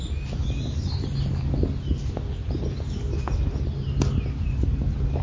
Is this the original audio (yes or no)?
yes